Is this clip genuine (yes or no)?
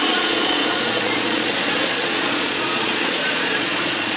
no